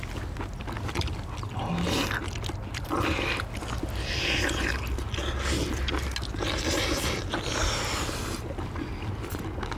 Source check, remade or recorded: recorded